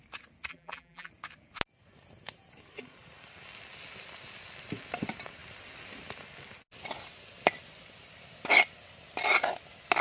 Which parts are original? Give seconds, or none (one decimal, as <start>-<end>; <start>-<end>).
0.0-0.5; 1.1-10.0